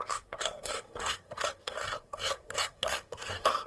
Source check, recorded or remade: remade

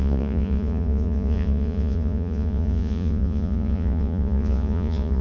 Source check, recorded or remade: remade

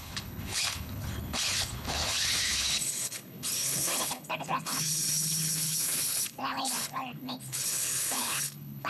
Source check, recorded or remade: remade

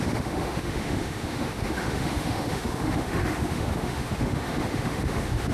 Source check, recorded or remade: remade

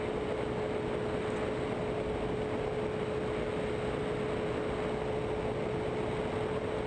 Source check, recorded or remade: recorded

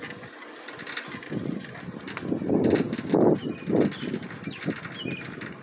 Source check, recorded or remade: recorded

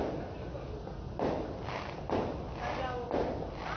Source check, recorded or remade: recorded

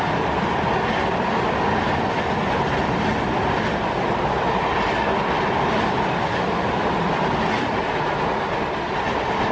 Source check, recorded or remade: recorded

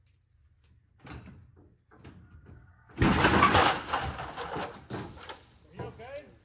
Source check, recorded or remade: recorded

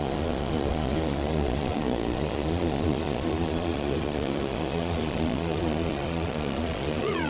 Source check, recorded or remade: remade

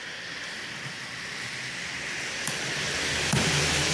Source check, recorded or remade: remade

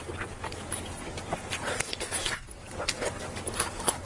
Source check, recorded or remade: recorded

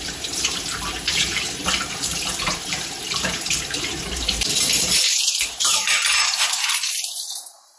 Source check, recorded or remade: remade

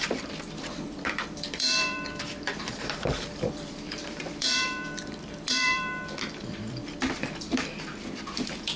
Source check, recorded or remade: remade